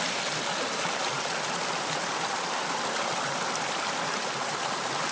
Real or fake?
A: real